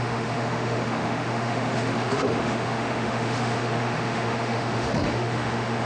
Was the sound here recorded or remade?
remade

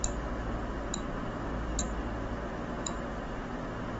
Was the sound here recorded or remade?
recorded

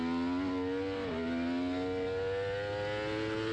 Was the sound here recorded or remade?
recorded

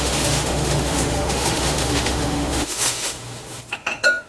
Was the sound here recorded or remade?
remade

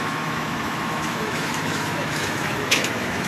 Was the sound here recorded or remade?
remade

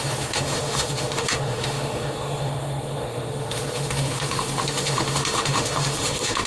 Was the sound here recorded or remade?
remade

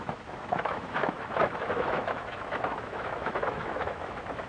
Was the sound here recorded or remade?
remade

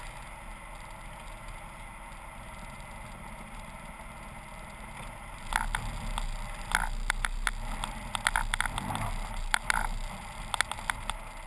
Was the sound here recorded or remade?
recorded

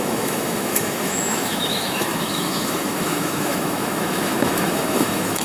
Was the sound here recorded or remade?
remade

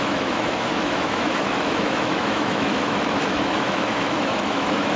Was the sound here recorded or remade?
remade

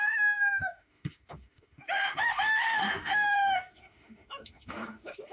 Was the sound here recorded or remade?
remade